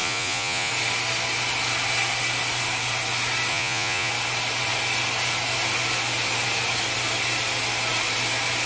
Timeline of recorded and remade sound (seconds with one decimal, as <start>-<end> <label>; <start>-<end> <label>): 0.0-0.7 remade; 0.7-3.5 recorded; 3.5-4.1 remade; 4.1-8.7 recorded